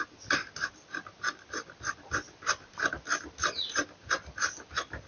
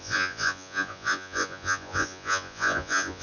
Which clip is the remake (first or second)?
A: second